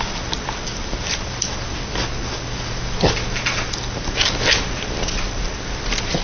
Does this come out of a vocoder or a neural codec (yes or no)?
no